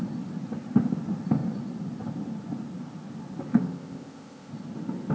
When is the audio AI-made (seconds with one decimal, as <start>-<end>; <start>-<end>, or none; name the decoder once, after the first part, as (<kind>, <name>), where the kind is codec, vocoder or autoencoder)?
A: 3.5-4.5 (codec, ZipCodec)